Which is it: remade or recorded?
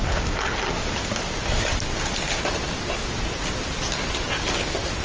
recorded